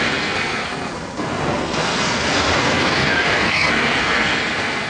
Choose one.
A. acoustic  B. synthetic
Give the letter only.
B